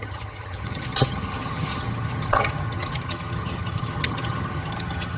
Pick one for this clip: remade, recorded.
remade